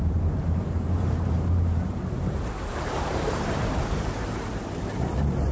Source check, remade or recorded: remade